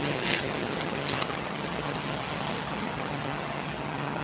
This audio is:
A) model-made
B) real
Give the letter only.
A